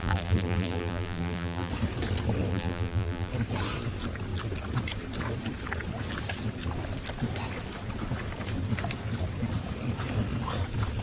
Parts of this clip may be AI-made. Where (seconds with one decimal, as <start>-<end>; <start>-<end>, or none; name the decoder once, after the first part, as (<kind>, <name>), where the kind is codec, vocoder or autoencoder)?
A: 0.0-1.7 (vocoder, BigVGAN v2); 2.5-3.3